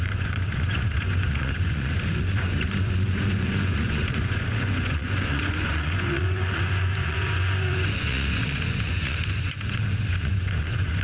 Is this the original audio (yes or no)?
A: no